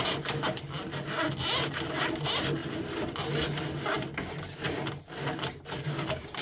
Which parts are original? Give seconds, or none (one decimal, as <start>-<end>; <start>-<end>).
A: 0.0-5.8